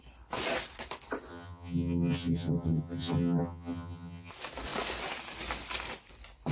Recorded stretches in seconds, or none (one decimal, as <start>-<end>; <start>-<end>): 0.0-1.3; 4.3-6.5

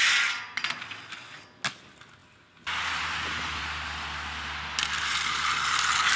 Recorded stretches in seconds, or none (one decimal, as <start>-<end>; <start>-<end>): 0.0-6.2

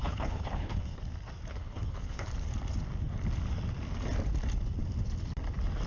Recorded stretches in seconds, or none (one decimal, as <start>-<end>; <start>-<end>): 1.0-1.5; 2.3-5.9

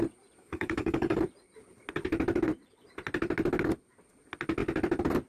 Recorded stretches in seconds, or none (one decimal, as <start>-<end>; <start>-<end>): 0.0-0.4; 1.2-5.3

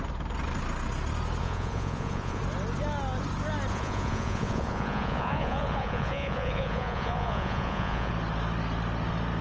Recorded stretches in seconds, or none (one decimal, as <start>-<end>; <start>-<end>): 0.0-1.4; 2.4-3.7; 8.1-9.4

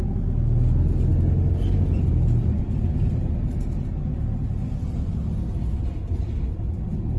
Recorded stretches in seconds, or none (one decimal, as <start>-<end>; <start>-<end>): 0.0-7.2